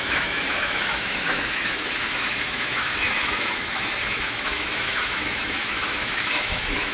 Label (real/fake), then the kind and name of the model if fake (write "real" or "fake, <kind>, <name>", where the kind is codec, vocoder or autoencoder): fake, autoencoder, DAC-VAE